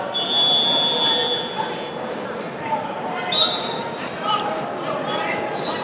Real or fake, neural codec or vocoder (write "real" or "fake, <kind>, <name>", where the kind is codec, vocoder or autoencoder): real